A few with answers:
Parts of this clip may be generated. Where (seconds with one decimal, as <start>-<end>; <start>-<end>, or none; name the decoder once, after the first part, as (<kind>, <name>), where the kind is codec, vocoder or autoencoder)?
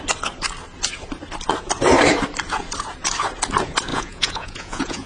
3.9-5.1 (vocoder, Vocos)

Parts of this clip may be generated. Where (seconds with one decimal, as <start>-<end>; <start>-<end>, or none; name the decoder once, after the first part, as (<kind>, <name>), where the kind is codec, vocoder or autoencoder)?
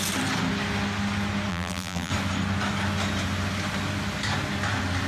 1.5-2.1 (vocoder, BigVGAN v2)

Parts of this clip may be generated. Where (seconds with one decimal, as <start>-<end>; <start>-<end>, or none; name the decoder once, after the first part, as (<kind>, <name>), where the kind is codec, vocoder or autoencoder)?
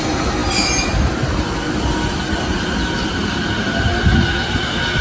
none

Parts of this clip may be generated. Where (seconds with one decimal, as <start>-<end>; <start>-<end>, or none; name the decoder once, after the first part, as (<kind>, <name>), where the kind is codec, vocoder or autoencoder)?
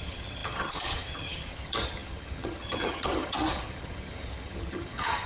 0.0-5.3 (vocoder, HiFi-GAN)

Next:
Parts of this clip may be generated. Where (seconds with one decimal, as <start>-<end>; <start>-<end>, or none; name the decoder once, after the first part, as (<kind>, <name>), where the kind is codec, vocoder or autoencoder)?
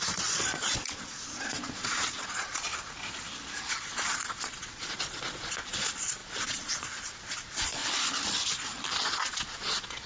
0.0-2.7 (vocoder, Vocos); 3.7-7.8; 8.9-10.1